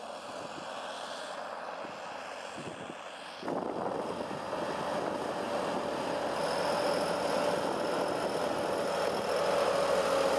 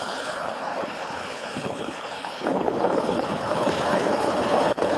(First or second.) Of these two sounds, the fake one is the second